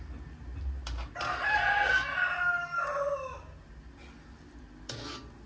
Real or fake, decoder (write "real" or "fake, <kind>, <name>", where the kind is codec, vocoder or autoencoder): real